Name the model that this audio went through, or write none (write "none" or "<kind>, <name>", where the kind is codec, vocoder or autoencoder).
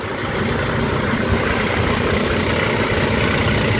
none